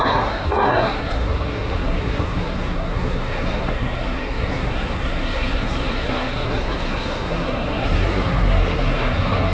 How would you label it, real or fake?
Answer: fake